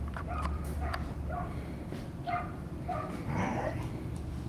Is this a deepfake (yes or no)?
yes